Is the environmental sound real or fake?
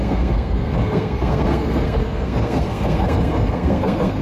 fake